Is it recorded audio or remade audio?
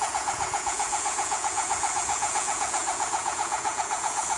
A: remade